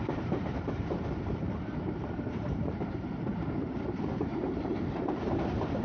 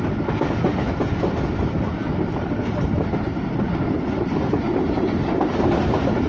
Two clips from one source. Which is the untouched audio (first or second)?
second